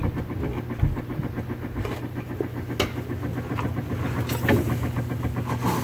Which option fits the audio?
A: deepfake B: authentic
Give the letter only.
B